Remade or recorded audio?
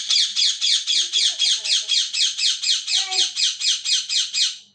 recorded